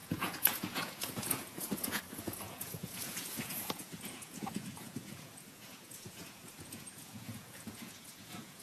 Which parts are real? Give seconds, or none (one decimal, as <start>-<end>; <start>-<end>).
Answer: none